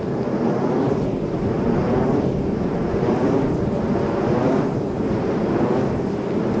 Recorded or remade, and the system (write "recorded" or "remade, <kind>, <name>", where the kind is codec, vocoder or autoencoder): recorded